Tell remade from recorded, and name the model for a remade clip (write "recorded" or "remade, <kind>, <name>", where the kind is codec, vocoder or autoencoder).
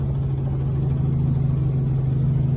recorded